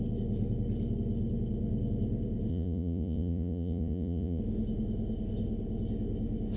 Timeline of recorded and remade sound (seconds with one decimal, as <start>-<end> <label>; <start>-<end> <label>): 0.0-2.5 recorded; 2.5-4.4 remade; 4.4-6.6 recorded